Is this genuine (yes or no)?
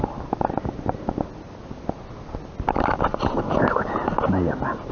yes